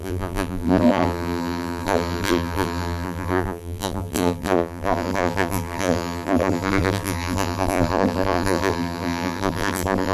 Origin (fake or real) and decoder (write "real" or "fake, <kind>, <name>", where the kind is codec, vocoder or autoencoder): fake, vocoder, BigVGAN v2